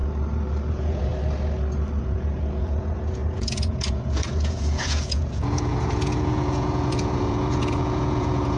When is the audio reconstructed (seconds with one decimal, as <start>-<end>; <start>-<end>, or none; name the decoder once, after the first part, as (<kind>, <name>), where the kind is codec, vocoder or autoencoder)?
0.7-1.1 (vocoder, Vocos); 2.0-8.6